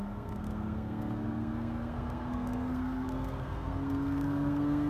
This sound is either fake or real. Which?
fake